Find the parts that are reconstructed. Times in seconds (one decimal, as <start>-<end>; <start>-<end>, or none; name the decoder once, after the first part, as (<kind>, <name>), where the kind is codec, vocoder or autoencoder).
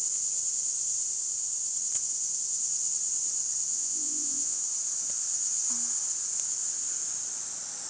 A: 3.7-4.6 (vocoder, Vocos)